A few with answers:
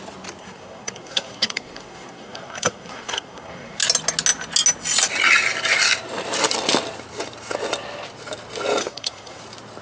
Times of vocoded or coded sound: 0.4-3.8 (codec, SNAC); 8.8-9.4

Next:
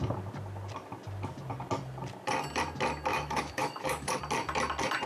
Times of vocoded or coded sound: 3.1-4.2 (autoencoder, DAC-VAE)

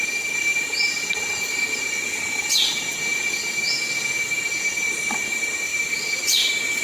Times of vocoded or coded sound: none

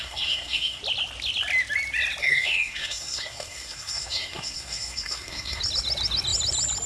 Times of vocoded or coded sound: 0.0-0.8 (codec, SNAC); 2.2-5.6

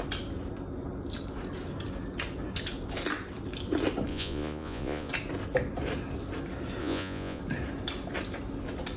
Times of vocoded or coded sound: 4.1-5.1 (vocoder, Vocos); 6.8-7.4

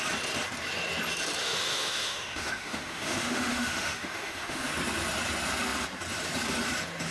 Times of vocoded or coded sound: 1.4-4.7 (autoencoder, DAC-VAE)

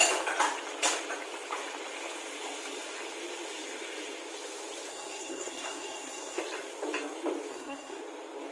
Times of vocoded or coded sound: 4.9-6.4 (codec, SNAC); 7.5-8.0

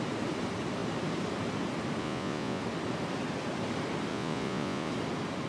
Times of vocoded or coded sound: 2.0-2.6 (vocoder, Vocos); 4.1-4.9